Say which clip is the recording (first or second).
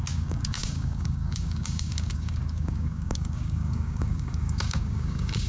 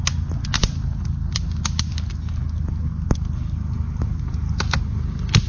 second